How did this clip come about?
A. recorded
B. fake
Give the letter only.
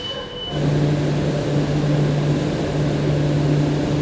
A